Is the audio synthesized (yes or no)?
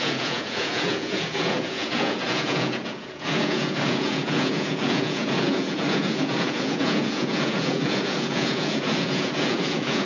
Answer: yes